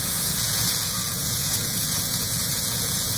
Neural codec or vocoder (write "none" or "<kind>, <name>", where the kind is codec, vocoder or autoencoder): vocoder, Vocos